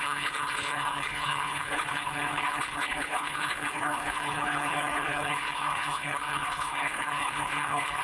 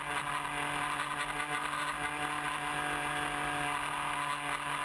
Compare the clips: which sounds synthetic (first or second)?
first